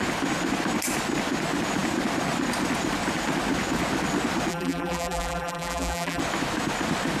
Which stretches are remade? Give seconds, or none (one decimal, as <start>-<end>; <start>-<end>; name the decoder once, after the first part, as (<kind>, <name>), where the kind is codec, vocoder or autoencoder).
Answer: 4.5-6.2 (vocoder, BigVGAN v2)